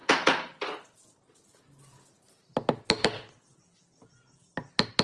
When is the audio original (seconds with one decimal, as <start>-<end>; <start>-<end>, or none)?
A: 0.0-5.0

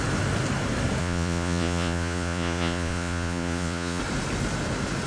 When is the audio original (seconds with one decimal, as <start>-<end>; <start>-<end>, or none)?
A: 0.0-1.0; 4.0-5.1

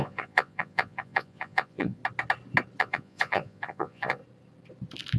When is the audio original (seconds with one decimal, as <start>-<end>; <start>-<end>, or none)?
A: 2.0-2.8; 4.2-5.2

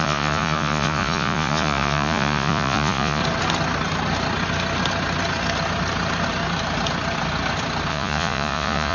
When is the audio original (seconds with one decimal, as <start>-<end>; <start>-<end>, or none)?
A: 3.2-7.9

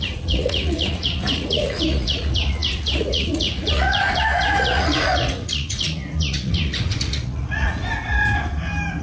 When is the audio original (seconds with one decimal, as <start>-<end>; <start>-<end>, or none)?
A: 7.8-9.0

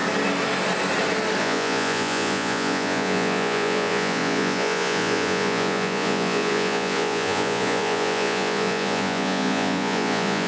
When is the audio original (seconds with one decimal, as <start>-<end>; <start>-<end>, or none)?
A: 0.0-1.4

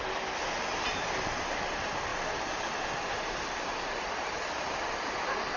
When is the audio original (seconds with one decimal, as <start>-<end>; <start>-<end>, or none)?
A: 0.0-5.6